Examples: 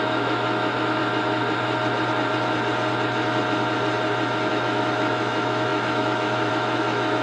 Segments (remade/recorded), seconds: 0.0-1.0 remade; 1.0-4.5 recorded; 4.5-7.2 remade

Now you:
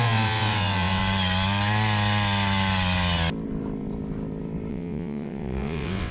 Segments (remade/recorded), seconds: 0.0-1.0 remade; 1.0-4.7 recorded; 4.7-6.1 remade

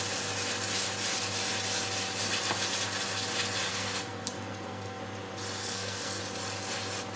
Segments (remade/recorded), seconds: 0.0-3.7 recorded; 3.7-5.0 remade; 5.0-5.6 recorded; 5.6-6.2 remade; 6.2-7.2 recorded

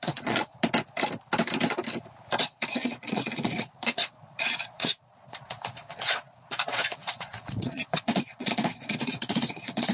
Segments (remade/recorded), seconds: 0.0-0.5 remade; 0.5-2.4 recorded; 2.4-9.9 remade

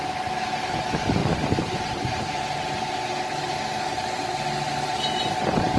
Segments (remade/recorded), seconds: 0.0-5.8 recorded

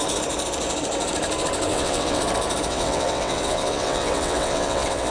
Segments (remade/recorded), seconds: 0.0-1.7 recorded; 1.7-2.2 remade; 2.2-2.7 recorded; 2.7-5.1 remade

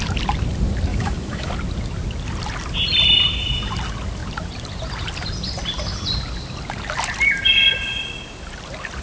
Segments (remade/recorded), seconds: 0.0-0.9 recorded; 0.9-1.5 remade; 1.5-9.0 recorded